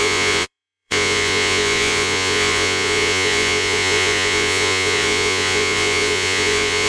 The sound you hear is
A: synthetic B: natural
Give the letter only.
A